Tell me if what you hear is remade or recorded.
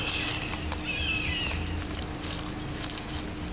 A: recorded